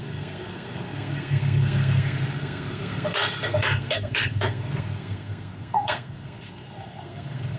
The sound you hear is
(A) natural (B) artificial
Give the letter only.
B